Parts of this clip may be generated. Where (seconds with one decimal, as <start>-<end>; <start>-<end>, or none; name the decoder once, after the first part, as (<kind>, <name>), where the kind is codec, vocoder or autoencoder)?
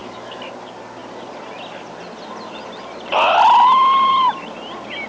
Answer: 0.0-0.5 (autoencoder, DAC-VAE)